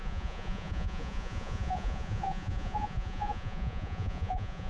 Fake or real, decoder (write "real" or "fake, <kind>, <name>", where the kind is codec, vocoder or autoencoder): fake, vocoder, Vocos